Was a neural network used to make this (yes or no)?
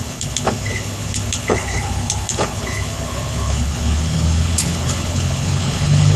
yes